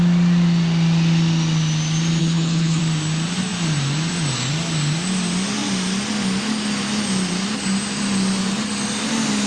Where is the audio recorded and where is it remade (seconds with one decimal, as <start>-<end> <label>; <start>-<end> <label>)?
0.0-2.2 recorded; 2.2-2.8 remade; 2.8-9.5 recorded